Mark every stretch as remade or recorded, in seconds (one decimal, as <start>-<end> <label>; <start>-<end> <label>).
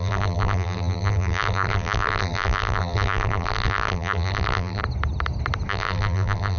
0.0-4.8 remade; 4.8-5.7 recorded; 5.7-6.6 remade